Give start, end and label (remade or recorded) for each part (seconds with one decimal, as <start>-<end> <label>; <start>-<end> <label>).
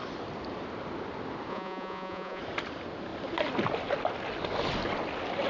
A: 0.0-1.5 recorded; 1.5-2.4 remade; 2.4-5.5 recorded